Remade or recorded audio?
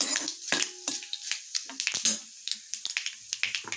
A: recorded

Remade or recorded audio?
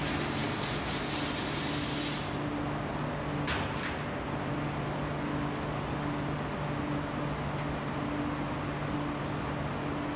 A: recorded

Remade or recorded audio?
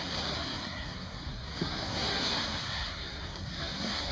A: remade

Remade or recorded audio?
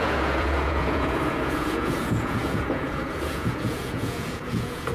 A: remade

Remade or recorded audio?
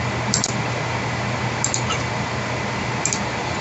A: recorded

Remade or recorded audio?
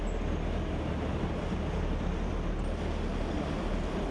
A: recorded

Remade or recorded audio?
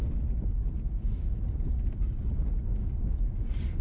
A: remade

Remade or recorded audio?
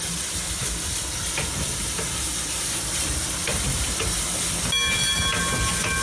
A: recorded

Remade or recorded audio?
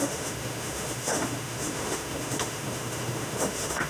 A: remade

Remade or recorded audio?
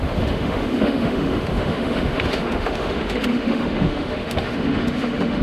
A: remade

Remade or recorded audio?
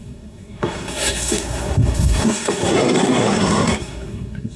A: remade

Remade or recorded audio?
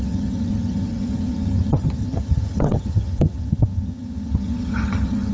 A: remade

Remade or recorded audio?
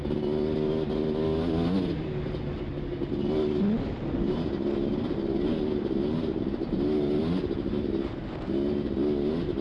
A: recorded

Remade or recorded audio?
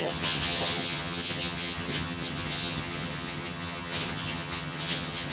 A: remade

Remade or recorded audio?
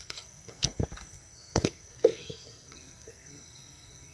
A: remade